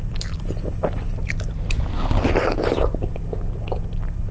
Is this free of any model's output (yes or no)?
no